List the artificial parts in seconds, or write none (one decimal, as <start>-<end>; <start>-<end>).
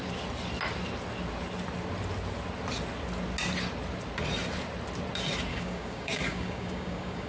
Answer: 5.5-7.3